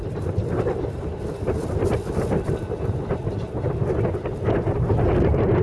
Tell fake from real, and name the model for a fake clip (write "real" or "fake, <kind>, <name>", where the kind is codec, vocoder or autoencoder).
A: real